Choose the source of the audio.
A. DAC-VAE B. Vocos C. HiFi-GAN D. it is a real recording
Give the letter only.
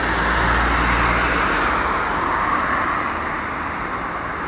D